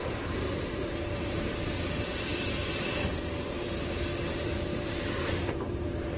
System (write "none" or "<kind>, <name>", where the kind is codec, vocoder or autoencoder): vocoder, BigVGAN v2